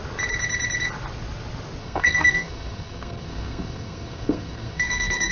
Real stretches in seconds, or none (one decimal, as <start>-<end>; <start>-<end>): 0.0-1.8